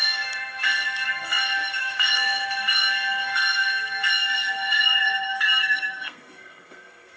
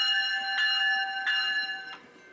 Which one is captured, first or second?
second